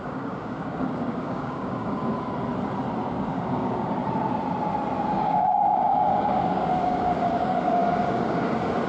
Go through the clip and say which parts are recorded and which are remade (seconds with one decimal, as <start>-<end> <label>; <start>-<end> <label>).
0.0-2.1 remade; 2.1-3.0 recorded; 3.0-4.0 remade; 4.0-5.2 recorded; 5.2-8.9 remade